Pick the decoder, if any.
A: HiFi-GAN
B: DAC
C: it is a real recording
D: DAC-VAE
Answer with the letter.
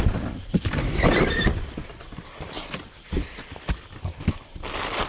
C